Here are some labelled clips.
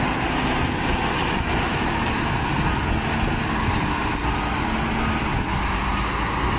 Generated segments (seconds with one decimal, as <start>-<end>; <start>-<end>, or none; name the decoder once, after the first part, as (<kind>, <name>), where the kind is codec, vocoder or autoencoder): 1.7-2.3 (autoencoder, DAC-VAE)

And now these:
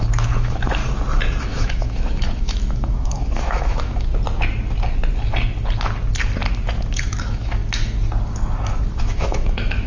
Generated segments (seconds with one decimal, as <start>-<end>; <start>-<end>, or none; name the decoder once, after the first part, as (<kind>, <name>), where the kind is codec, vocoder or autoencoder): 0.0-0.8 (autoencoder, DAC-VAE); 1.4-4.1; 7.0-7.6; 9.0-9.9

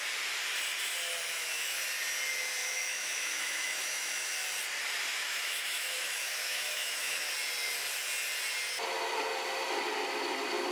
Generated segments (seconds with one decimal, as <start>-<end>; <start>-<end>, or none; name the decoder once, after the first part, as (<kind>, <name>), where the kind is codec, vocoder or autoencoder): 1.3-1.8 (autoencoder, DAC-VAE); 2.6-4.3; 5.1-7.3